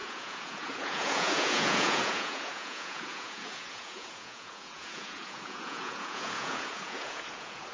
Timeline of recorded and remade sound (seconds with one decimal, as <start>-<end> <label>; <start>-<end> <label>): 0.0-7.7 remade